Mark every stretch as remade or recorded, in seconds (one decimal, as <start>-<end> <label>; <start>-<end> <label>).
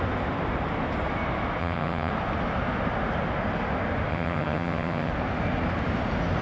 0.0-1.6 recorded; 1.6-2.1 remade; 2.1-4.1 recorded; 4.1-5.1 remade; 5.1-6.4 recorded